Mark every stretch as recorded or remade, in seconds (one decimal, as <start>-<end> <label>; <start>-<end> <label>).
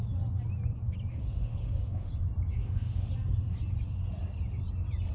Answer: 0.0-1.1 recorded; 1.1-2.1 remade; 2.1-2.5 recorded; 2.5-3.1 remade; 3.1-5.1 recorded